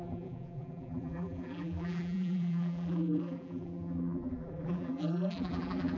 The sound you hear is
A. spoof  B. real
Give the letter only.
A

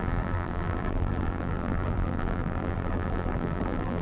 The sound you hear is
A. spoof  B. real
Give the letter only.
A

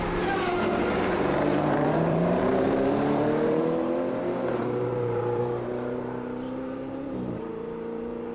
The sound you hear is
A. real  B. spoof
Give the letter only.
B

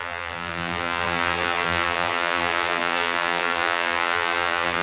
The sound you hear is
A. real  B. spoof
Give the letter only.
B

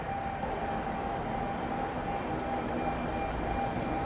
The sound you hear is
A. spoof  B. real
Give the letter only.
B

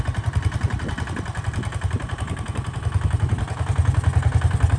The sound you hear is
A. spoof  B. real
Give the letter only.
A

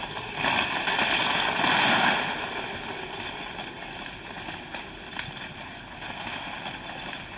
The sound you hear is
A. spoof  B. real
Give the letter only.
B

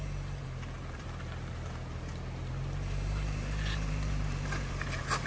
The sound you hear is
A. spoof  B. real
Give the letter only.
A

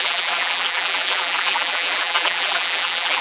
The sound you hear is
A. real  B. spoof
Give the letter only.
B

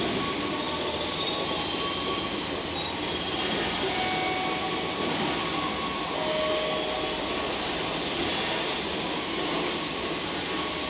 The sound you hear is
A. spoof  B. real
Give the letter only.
B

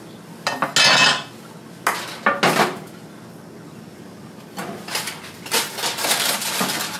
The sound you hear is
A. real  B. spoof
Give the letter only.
A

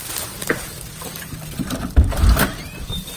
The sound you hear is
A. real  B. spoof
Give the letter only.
B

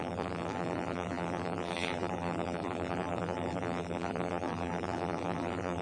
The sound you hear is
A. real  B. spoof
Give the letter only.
B